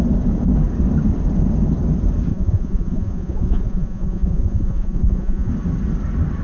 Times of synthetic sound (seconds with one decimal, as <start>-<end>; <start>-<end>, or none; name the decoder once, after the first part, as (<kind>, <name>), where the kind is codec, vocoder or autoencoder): 2.3-5.5 (vocoder, Vocos)